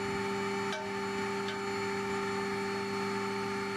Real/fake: real